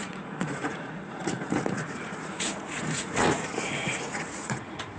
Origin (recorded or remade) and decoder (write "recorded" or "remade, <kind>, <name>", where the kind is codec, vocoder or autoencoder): remade, vocoder, Vocos